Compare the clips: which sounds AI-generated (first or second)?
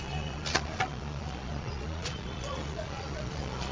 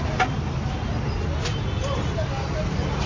first